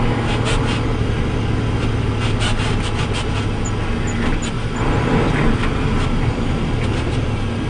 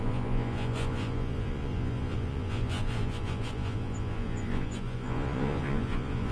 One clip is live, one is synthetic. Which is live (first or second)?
first